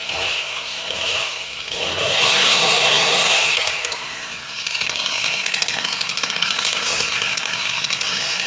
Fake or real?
fake